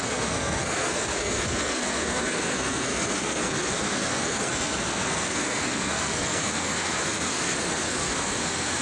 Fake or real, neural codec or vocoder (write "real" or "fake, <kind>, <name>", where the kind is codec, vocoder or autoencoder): fake, codec, SNAC